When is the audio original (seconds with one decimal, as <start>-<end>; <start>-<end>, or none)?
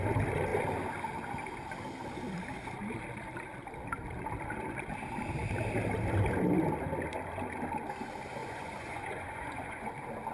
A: 0.0-8.4; 9.9-10.3